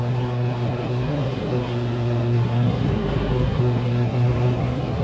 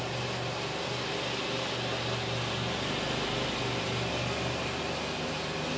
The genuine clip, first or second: second